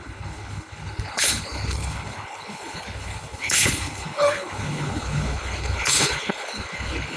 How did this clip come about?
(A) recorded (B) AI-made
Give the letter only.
B